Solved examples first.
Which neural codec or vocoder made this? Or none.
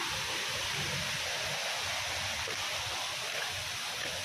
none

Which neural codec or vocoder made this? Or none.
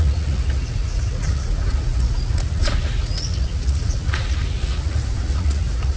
vocoder, Vocos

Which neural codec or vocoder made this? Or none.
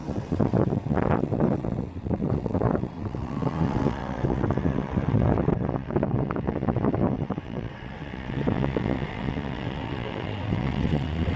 vocoder, WaveNeXt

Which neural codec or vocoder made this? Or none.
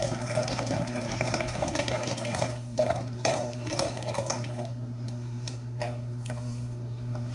codec, SNAC